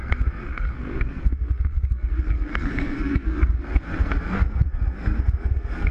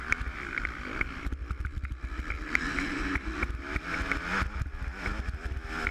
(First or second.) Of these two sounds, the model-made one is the first